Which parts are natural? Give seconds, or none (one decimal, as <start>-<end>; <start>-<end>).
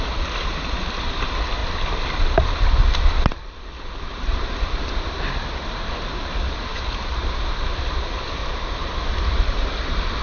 8.4-8.9